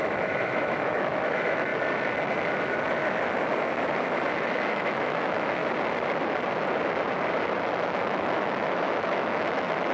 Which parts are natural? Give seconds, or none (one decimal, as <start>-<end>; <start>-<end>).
1.7-4.4; 5.6-7.6